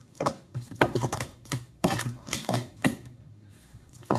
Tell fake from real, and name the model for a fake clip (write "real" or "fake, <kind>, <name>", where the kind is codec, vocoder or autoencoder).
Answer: fake, codec, SNAC